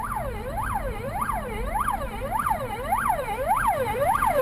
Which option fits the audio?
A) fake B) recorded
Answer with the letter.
A